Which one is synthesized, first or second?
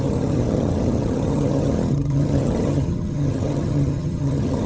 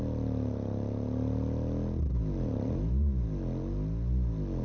first